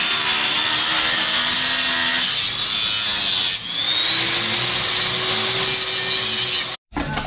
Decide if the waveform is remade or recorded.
recorded